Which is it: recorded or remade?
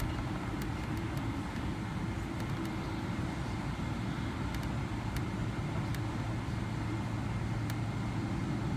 recorded